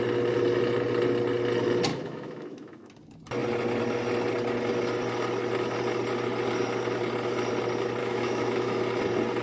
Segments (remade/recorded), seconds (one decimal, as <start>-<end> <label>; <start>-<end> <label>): 0.0-1.9 recorded; 1.9-2.9 remade; 2.9-8.0 recorded; 8.0-8.8 remade; 8.8-9.4 recorded